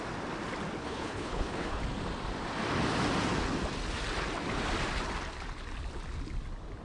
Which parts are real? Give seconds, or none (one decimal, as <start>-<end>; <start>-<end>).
0.0-0.8; 1.8-6.8